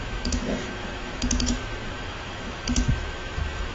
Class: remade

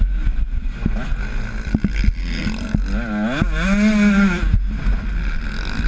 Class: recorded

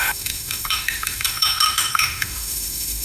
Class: remade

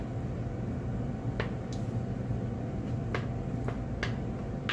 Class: recorded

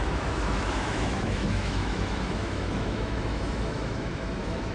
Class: remade